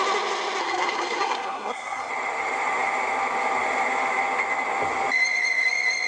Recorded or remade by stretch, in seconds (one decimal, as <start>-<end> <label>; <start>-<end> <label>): 0.0-0.6 recorded; 0.6-2.1 remade; 2.1-6.1 recorded